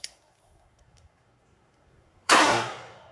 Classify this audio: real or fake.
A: fake